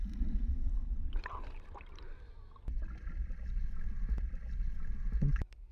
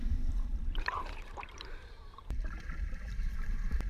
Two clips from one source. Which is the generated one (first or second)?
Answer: second